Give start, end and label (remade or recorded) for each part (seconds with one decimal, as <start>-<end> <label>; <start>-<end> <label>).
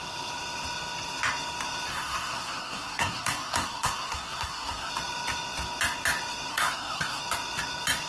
0.0-1.9 recorded; 1.9-4.9 remade; 4.9-6.5 recorded; 6.5-7.2 remade; 7.2-8.1 recorded